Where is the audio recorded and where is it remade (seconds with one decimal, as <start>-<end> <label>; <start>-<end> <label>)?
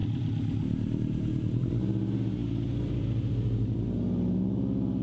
0.0-1.7 remade; 1.7-2.4 recorded; 2.4-4.2 remade; 4.2-5.0 recorded